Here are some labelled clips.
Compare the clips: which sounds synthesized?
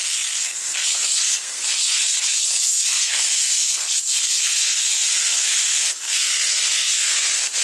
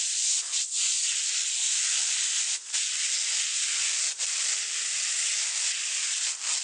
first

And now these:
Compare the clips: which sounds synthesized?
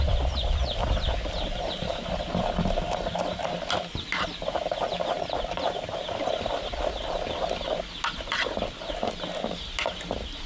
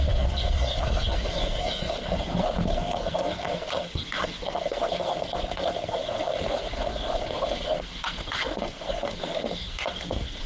second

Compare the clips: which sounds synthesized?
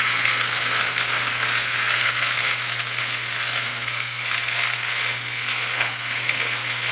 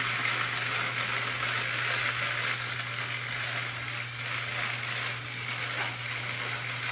first